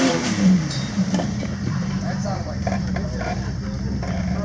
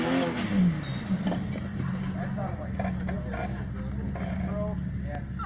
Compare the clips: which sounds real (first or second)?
second